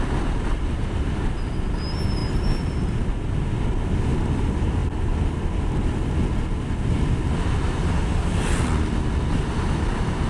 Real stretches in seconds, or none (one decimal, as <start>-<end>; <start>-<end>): 0.0-10.3

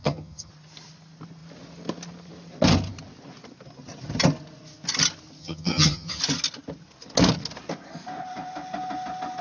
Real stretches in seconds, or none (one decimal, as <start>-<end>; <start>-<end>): 0.5-5.4; 6.2-9.4

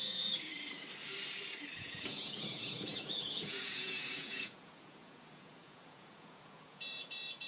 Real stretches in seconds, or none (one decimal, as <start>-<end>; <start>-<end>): 0.5-1.8

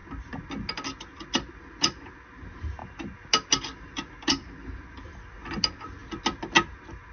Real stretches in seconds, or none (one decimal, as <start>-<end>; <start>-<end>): 0.0-7.1

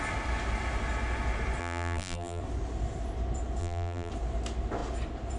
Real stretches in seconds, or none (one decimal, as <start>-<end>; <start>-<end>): 0.0-1.6; 2.4-3.6; 4.1-5.4

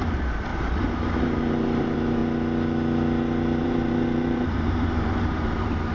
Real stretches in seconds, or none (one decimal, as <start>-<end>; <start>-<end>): 0.5-1.6; 2.2-3.6

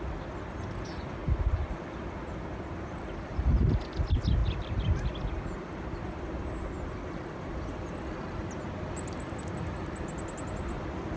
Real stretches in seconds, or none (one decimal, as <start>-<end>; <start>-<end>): 0.0-1.2; 1.7-11.2

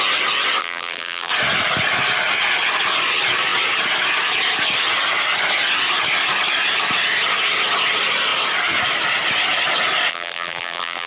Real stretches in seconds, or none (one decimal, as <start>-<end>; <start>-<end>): 0.0-0.6; 1.3-10.1